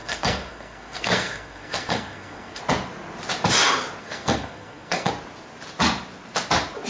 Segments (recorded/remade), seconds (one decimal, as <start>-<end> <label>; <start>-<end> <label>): 0.0-2.6 remade; 2.6-4.0 recorded; 4.0-5.1 remade; 5.1-6.9 recorded